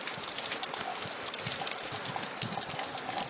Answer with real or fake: real